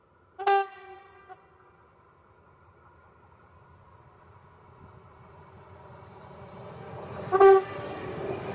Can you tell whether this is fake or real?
real